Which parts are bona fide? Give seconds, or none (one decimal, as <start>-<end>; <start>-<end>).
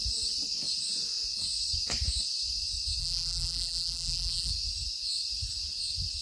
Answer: 0.0-3.0; 4.5-6.2